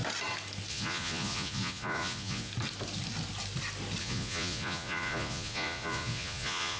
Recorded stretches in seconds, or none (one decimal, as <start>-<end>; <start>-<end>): 0.0-0.7; 2.5-4.0